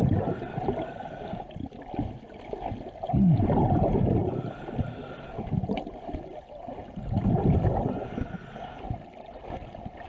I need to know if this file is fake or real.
real